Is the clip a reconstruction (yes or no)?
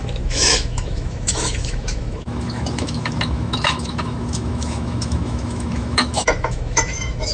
yes